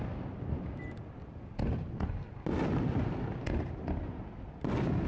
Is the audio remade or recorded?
recorded